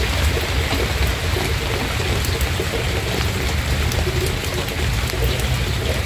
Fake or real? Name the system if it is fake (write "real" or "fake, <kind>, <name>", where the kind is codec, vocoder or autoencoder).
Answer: real